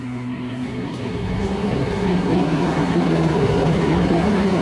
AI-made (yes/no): yes